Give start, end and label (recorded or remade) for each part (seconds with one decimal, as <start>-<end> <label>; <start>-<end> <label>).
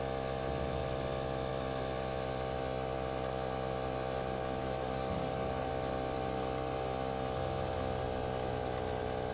0.0-4.6 recorded; 4.6-5.7 remade; 5.7-9.3 recorded